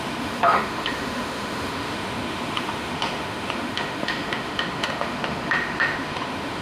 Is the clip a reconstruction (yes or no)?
yes